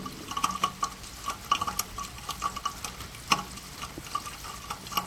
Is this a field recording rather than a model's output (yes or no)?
yes